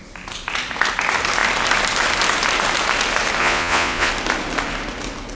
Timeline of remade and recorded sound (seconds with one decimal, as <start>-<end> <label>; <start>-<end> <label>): 0.0-3.4 recorded; 3.4-4.1 remade; 4.1-5.3 recorded